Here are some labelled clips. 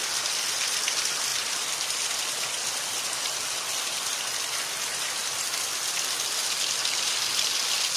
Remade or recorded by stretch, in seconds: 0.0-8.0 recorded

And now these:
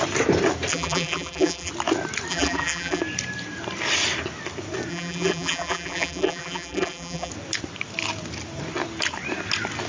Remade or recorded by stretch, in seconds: 0.0-0.7 recorded; 0.7-1.7 remade; 1.7-2.3 recorded; 2.3-3.0 remade; 3.0-4.9 recorded; 4.9-7.3 remade; 7.3-9.9 recorded

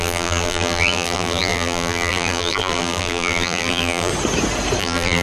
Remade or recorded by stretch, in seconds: 0.0-4.1 remade; 4.1-4.8 recorded; 4.8-5.2 remade

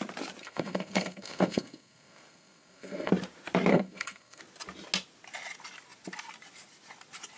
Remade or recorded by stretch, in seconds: 0.0-0.4 recorded; 0.4-3.1 remade; 3.1-3.7 recorded; 3.7-4.4 remade; 4.4-7.4 recorded

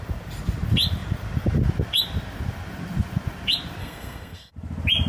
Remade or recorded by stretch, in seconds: 0.0-3.8 recorded; 3.8-4.5 remade; 4.5-5.1 recorded

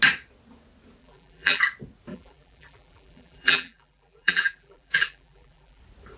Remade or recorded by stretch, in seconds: 0.0-1.0 recorded; 1.0-1.6 remade; 1.6-2.1 recorded; 2.1-5.8 remade; 5.8-6.2 recorded

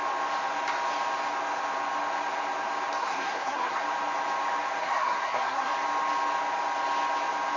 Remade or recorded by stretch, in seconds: 0.0-3.0 recorded; 3.0-3.8 remade; 3.8-4.8 recorded; 4.8-5.7 remade; 5.7-7.6 recorded

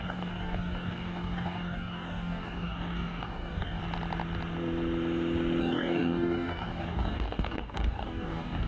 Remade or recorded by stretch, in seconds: 0.0-3.8 remade; 3.8-5.6 recorded; 5.6-8.7 remade